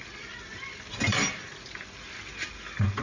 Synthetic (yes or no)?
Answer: no